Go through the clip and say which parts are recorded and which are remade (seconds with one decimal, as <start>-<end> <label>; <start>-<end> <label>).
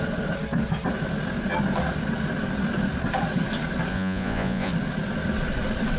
0.0-3.9 recorded; 3.9-4.7 remade; 4.7-6.0 recorded